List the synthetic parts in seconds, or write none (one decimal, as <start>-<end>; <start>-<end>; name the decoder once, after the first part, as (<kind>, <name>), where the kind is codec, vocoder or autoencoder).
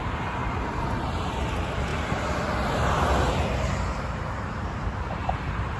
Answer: 0.0-5.8 (vocoder, BigVGAN v2)